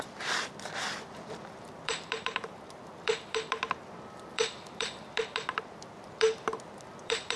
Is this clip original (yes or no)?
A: no